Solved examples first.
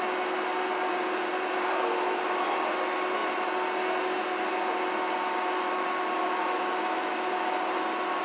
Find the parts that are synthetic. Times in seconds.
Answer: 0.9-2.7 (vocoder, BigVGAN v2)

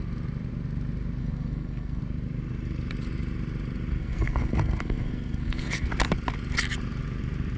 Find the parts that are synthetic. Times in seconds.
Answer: 1.2-2.0 (codec, SNAC); 4.0-5.9

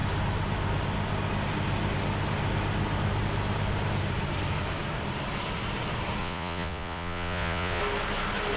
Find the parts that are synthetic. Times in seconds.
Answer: 6.2-7.8 (vocoder, Vocos)

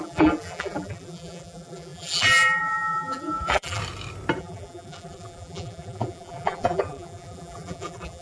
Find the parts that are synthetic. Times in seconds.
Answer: 0.0-3.8 (vocoder, BigVGAN v2); 4.4-8.2

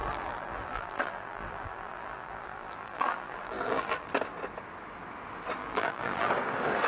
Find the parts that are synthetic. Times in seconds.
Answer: 0.0-4.1 (vocoder, BigVGAN v2); 5.6-6.3

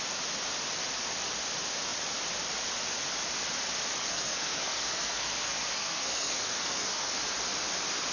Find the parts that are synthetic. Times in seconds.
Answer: 4.0-7.2 (codec, SNAC)

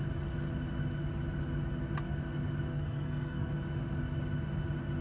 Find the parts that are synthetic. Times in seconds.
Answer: 2.7-3.5 (codec, SNAC)